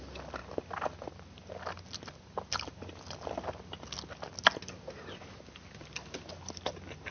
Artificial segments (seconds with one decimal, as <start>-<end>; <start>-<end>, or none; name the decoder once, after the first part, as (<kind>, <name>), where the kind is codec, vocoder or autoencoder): none